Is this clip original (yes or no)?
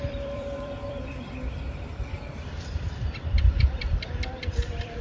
no